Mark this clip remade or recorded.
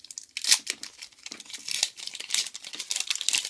recorded